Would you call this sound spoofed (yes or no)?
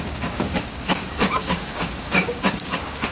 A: yes